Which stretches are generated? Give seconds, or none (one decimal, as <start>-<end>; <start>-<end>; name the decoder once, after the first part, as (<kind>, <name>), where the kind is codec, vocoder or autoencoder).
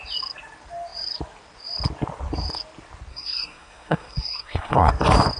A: 3.1-4.9 (codec, SNAC)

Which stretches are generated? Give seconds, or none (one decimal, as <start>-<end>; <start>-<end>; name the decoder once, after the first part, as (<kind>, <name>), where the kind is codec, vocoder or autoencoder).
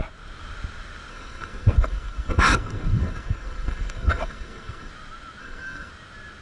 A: 1.1-4.9 (codec, SNAC); 5.4-5.9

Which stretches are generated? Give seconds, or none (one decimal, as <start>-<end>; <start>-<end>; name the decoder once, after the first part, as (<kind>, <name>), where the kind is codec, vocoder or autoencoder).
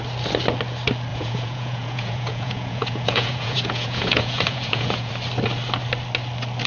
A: 1.1-5.1 (vocoder, Vocos)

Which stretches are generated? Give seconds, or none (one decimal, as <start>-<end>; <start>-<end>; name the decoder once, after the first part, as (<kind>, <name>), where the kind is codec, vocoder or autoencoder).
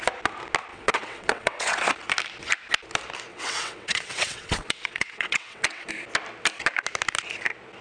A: 0.7-1.9 (vocoder, WaveNeXt); 3.3-5.9